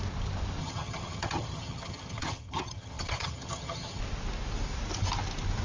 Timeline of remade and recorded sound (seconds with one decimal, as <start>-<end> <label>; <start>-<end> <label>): 0.0-0.6 recorded; 0.6-4.0 remade; 4.0-5.6 recorded